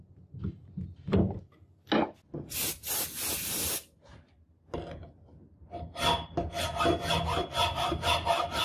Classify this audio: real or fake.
real